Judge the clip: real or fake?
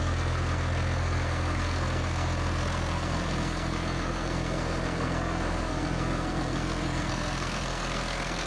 fake